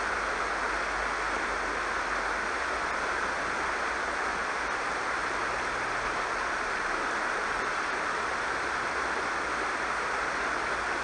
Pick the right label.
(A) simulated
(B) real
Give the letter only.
B